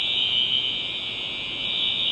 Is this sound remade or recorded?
recorded